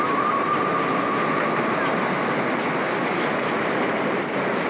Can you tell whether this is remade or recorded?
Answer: recorded